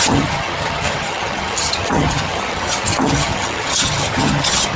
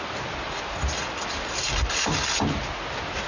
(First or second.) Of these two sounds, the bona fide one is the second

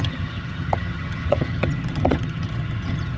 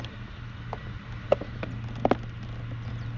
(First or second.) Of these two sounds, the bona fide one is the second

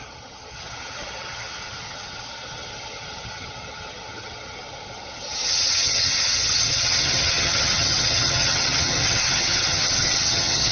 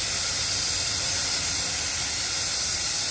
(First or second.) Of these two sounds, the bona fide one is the second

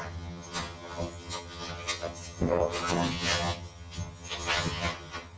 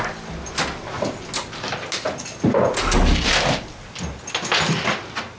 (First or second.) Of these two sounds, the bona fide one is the second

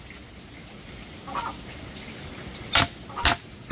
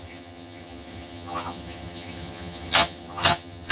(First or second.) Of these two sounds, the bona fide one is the first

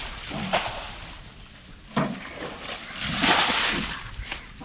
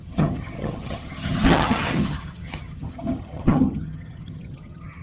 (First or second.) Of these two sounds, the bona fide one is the first